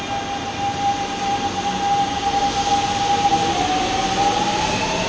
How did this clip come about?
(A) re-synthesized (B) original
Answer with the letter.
B